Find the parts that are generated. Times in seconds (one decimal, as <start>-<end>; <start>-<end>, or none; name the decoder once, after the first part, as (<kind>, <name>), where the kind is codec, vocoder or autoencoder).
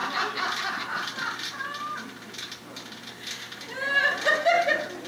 0.0-3.1 (vocoder, BigVGAN v2)